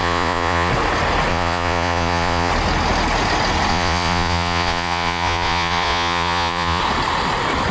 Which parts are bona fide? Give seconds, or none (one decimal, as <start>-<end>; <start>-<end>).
0.7-1.3; 2.5-3.7; 6.8-7.7